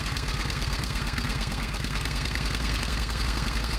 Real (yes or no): no